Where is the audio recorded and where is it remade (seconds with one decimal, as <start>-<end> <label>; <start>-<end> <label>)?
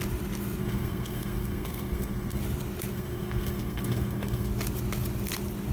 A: 0.0-0.6 recorded; 0.6-2.4 remade; 2.4-2.9 recorded; 2.9-4.5 remade; 4.5-5.7 recorded